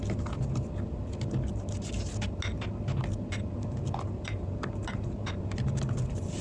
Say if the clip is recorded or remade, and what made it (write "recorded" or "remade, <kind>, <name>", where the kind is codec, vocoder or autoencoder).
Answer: recorded